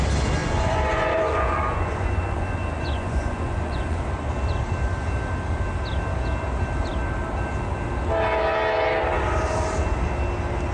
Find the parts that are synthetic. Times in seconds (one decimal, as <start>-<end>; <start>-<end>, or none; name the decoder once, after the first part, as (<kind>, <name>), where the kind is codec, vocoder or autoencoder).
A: 0.4-4.0 (vocoder, Vocos)